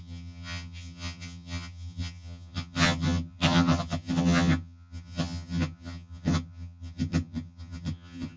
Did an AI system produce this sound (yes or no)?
yes